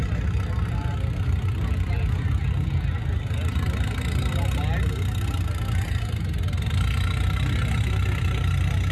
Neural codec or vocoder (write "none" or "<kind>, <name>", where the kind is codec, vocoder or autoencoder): none